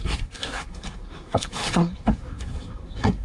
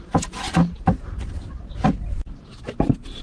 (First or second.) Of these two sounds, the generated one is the first